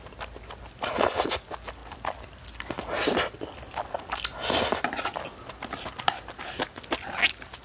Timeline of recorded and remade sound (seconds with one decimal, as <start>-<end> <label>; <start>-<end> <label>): 0.0-7.6 recorded